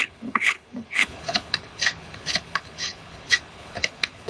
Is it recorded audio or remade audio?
remade